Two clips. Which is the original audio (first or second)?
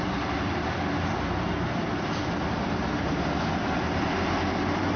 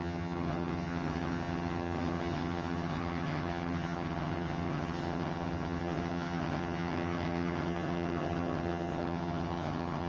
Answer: first